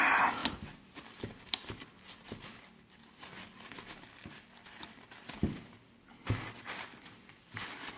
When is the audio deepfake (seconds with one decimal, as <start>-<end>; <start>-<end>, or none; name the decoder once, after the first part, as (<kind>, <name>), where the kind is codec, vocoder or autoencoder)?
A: none